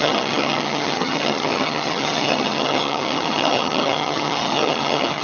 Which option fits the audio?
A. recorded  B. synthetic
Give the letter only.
B